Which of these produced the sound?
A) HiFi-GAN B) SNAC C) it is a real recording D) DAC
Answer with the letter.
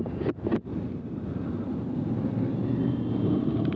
C